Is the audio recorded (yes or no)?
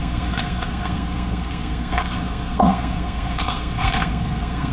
no